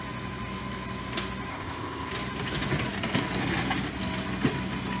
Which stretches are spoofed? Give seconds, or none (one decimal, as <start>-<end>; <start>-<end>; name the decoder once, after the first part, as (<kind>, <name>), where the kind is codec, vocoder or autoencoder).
1.5-2.1 (codec, ZipCodec)